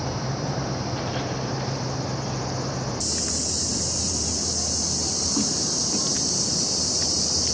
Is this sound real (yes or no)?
no